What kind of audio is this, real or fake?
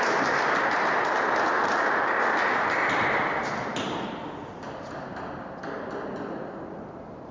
real